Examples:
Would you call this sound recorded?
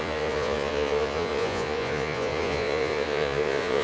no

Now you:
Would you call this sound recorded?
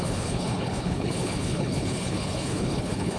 no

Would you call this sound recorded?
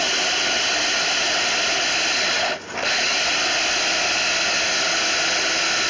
yes